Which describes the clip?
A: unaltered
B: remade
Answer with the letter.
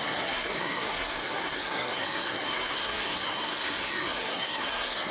B